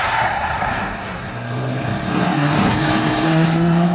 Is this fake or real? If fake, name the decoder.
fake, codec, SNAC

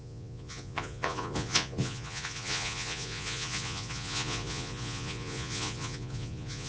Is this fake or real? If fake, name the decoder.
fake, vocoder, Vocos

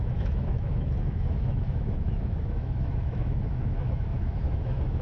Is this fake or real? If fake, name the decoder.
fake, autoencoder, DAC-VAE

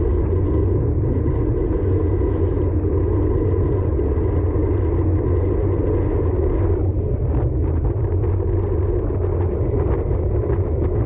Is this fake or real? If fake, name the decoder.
real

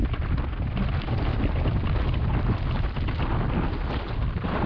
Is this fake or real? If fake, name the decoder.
real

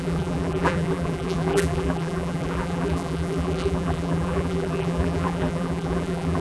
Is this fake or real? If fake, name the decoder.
fake, vocoder, BigVGAN v2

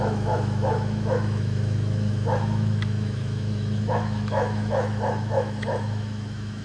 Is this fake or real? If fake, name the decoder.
fake, autoencoder, DAC-VAE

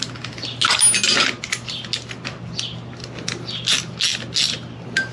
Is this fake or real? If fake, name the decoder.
real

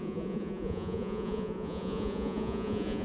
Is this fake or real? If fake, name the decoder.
fake, vocoder, Vocos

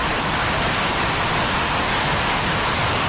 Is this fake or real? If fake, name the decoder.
fake, vocoder, BigVGAN v2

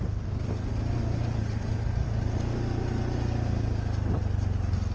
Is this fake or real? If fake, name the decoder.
real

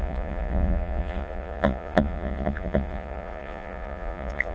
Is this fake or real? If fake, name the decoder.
fake, vocoder, Vocos